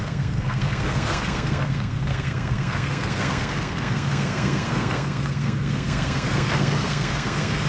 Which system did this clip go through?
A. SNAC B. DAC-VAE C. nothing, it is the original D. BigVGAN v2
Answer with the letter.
A